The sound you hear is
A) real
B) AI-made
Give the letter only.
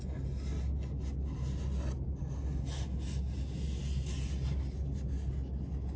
A